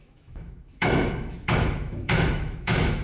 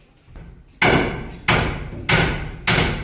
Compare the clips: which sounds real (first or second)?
second